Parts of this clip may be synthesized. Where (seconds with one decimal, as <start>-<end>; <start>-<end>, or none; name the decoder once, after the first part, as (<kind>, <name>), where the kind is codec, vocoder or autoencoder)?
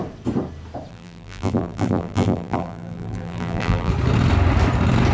0.9-3.9 (vocoder, BigVGAN v2)